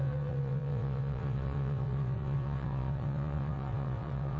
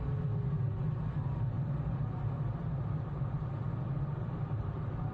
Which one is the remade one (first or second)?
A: first